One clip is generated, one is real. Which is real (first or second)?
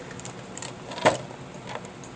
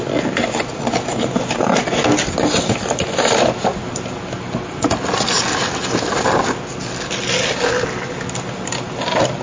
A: second